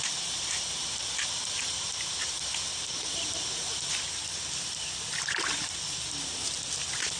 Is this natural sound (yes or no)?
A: no